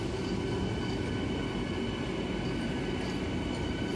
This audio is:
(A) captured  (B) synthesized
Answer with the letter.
A